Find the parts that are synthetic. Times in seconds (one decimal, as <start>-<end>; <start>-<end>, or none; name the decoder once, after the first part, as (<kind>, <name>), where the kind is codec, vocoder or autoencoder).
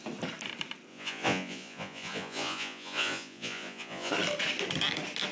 0.9-4.1 (vocoder, Vocos)